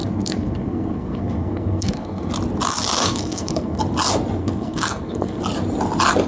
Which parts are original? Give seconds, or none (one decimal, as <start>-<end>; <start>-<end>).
2.3-3.0; 3.8-4.4; 5.4-6.3

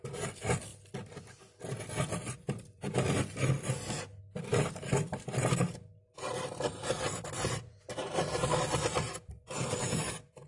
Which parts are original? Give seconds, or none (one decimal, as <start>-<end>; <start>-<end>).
0.7-2.2